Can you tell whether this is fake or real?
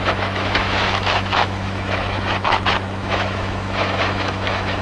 fake